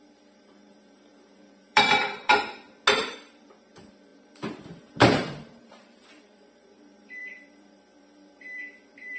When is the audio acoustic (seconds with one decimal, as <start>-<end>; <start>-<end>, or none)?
2.3-3.0